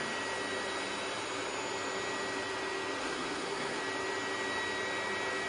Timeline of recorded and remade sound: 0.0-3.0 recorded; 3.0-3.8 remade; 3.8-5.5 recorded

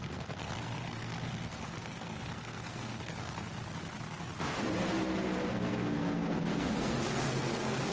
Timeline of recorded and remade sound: 0.0-3.5 remade; 3.5-5.5 recorded; 5.5-7.9 remade

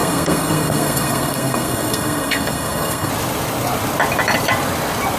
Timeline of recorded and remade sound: 0.0-3.1 remade; 3.1-5.2 recorded

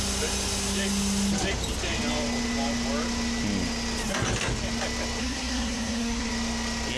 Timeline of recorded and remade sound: 0.0-5.2 recorded; 5.2-6.3 remade; 6.3-7.0 recorded

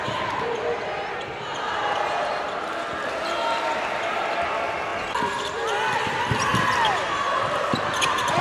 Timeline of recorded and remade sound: 0.0-8.4 recorded